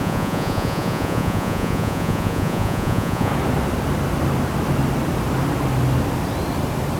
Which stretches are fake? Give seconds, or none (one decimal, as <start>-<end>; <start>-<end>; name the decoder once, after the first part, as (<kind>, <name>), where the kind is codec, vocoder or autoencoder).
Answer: 0.0-3.3 (vocoder, Vocos)